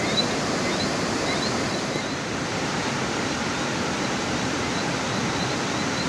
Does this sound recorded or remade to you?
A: remade